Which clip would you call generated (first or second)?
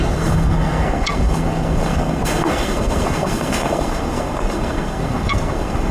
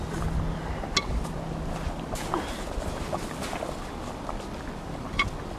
first